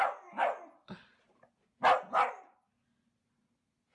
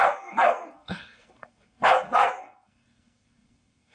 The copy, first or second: second